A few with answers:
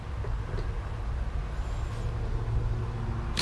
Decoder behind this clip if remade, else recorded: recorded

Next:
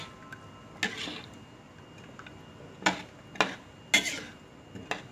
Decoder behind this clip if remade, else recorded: recorded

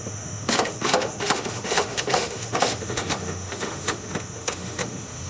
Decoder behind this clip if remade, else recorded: remade, autoencoder, DAC-VAE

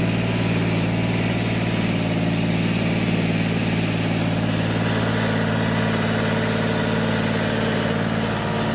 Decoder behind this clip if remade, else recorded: recorded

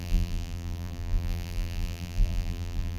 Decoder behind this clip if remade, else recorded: remade, vocoder, BigVGAN v2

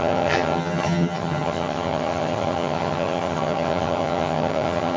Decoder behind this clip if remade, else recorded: remade, vocoder, HiFi-GAN